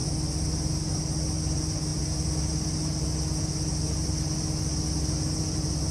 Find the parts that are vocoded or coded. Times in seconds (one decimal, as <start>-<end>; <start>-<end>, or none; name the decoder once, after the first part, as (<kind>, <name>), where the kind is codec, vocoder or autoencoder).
none